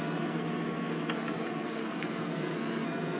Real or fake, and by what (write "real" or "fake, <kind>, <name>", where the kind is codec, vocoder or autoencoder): fake, codec, SNAC